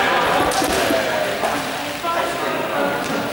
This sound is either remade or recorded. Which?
recorded